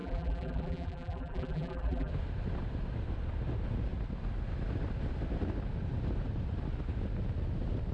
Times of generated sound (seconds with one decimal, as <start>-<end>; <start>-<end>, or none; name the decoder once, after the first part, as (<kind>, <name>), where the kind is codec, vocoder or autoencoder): 0.0-2.1 (vocoder, BigVGAN v2)

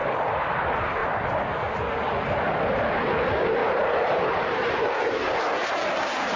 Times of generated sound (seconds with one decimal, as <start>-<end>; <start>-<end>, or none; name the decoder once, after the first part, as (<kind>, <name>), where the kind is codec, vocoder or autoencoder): 3.6-5.4 (vocoder, BigVGAN v2)

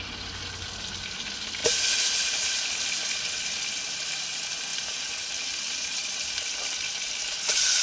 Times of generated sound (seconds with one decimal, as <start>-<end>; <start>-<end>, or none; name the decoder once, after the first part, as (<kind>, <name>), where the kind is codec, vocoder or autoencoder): 1.6-2.7 (vocoder, BigVGAN v2); 4.7-6.3